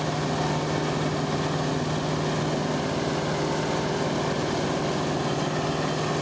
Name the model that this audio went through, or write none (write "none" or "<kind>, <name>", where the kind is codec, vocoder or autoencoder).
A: none